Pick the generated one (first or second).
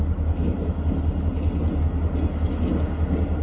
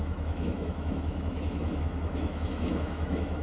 second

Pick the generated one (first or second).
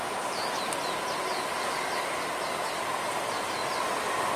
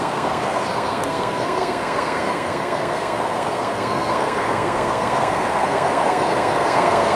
second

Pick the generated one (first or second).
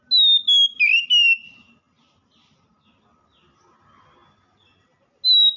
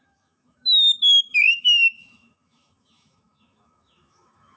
second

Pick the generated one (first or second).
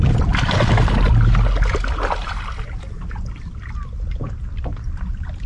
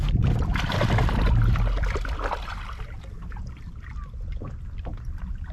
second